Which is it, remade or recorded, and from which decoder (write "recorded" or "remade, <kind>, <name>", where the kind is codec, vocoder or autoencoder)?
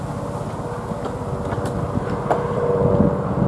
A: recorded